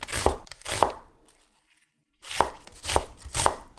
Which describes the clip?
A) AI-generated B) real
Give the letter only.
B